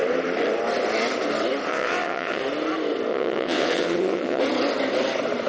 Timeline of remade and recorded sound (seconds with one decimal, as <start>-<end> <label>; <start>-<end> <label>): 0.0-1.7 recorded; 1.7-2.4 remade; 2.4-3.1 recorded; 3.1-4.4 remade; 4.4-5.5 recorded